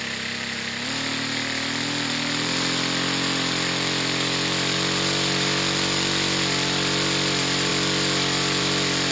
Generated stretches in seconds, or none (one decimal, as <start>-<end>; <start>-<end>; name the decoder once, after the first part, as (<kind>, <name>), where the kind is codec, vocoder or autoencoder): none